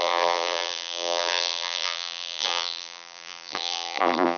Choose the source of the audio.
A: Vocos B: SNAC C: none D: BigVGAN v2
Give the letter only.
D